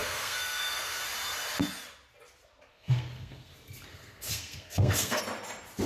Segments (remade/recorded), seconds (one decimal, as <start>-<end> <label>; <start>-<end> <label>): 0.0-1.0 remade; 1.0-2.7 recorded; 2.7-3.5 remade; 3.5-3.9 recorded; 3.9-5.2 remade; 5.2-5.9 recorded